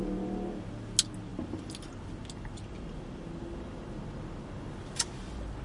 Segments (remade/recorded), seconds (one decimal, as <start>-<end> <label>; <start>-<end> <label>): 0.0-5.6 recorded

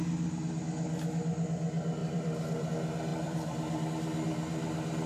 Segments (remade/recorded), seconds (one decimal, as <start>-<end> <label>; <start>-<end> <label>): 0.0-2.0 recorded; 2.0-2.7 remade; 2.7-3.1 recorded; 3.1-3.9 remade; 3.9-5.1 recorded

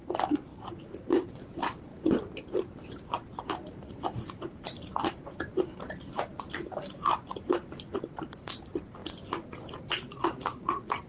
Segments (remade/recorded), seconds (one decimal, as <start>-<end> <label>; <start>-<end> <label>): 0.0-9.0 remade; 9.0-9.8 recorded; 9.8-11.1 remade

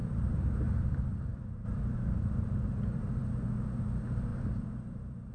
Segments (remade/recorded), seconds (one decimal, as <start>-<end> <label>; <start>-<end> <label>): 0.0-3.2 remade; 3.2-4.3 recorded; 4.3-5.3 remade

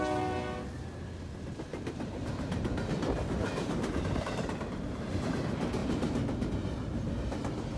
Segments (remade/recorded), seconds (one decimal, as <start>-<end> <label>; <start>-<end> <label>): 0.0-1.7 recorded; 1.7-2.9 remade; 2.9-3.4 recorded; 3.4-5.3 remade; 5.3-5.8 recorded; 5.8-6.5 remade; 6.5-7.8 recorded

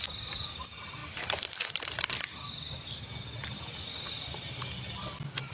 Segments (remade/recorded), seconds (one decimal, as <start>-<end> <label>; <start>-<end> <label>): 0.0-1.0 recorded; 1.0-1.9 remade; 1.9-5.5 recorded